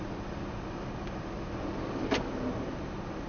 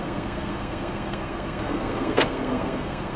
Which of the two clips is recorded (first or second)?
first